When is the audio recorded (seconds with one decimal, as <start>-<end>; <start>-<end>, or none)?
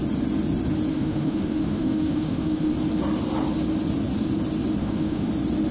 0.0-0.9; 2.7-4.8; 5.3-5.7